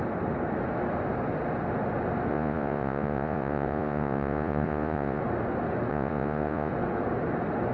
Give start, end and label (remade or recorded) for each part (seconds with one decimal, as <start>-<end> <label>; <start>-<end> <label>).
0.0-2.3 recorded; 2.3-5.2 remade; 5.2-5.9 recorded; 5.9-6.7 remade; 6.7-7.7 recorded